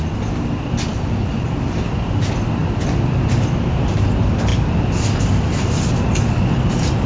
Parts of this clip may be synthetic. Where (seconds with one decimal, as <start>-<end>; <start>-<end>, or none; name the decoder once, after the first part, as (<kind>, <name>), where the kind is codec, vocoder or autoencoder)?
none

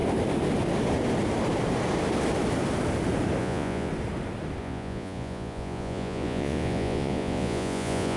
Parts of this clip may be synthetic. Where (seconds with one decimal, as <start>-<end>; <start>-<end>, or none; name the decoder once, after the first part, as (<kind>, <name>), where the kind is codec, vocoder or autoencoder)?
3.4-3.9 (vocoder, Vocos); 4.6-8.2

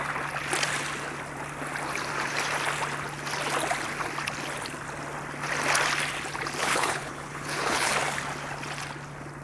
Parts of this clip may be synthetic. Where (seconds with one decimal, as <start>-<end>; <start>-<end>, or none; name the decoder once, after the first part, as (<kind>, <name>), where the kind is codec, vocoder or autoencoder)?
6.6-7.9 (codec, HILCodec)

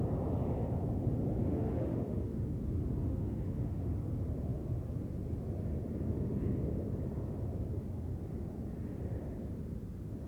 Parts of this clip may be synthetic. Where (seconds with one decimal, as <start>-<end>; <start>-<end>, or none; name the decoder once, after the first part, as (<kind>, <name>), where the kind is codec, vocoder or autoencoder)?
1.4-2.6 (autoencoder, DAC-VAE); 3.1-3.9